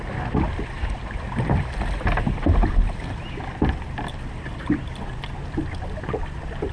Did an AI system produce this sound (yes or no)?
no